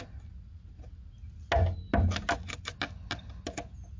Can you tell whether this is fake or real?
real